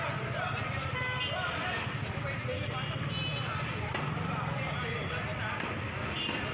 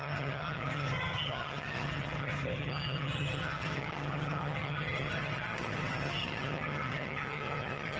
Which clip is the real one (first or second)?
first